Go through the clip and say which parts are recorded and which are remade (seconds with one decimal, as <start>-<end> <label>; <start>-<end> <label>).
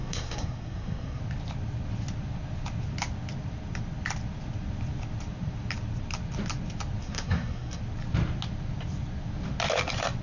0.0-1.2 remade; 1.2-7.0 recorded; 7.0-7.8 remade; 7.8-10.2 recorded